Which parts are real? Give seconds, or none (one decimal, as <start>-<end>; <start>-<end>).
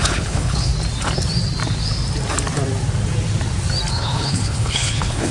0.7-3.9